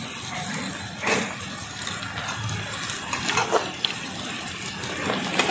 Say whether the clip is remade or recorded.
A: recorded